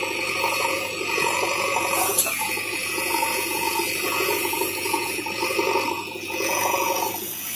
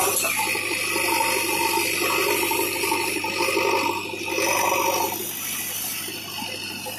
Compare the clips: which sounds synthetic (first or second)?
first